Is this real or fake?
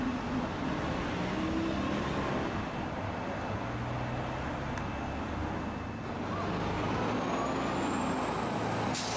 real